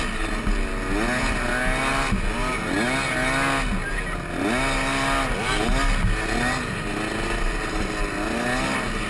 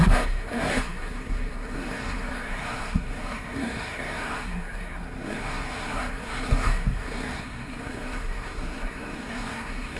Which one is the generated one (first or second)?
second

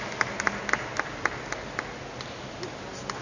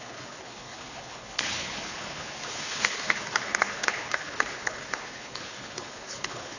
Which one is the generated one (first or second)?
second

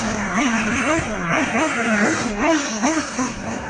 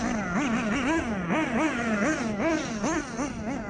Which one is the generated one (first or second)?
first